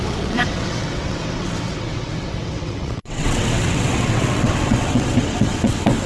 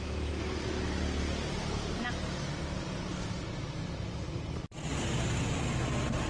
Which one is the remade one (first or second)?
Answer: first